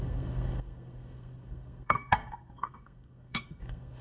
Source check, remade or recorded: remade